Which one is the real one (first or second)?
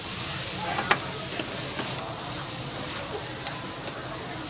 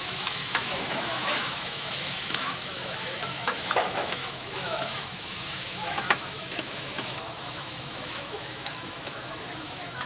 first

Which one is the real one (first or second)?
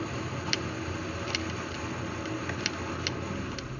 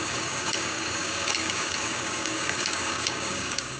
first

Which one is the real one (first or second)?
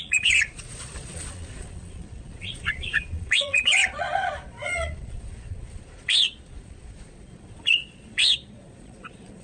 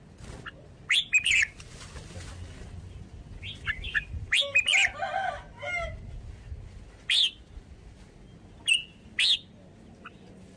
second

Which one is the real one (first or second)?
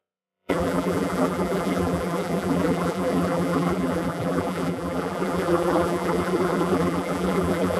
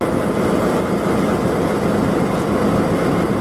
second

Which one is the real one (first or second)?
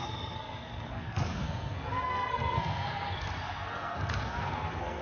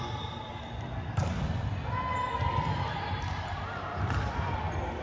second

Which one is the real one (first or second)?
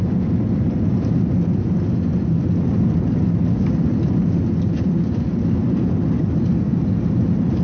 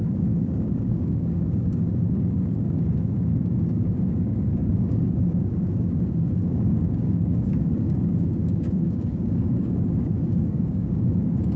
first